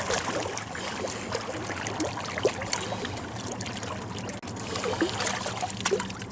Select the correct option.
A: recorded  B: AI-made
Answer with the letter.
A